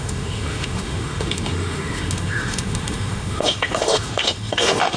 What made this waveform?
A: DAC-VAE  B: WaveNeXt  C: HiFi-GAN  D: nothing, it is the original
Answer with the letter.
A